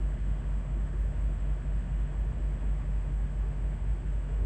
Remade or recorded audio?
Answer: remade